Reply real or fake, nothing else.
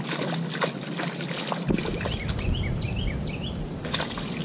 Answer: real